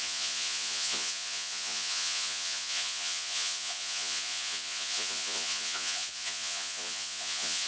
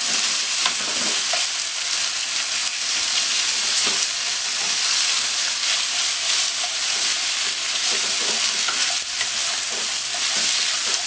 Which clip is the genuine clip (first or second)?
second